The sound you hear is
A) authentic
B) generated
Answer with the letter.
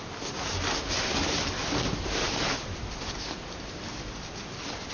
A